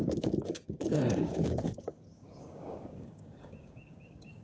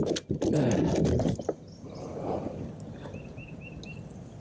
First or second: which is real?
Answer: second